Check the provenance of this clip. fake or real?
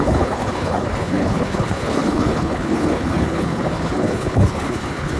fake